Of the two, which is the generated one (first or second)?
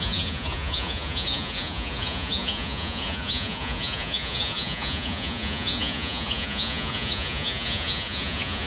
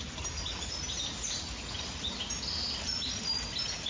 first